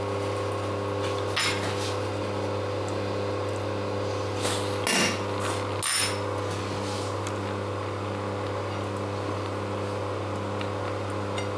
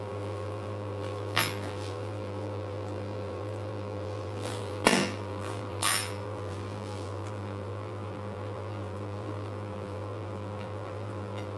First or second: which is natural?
first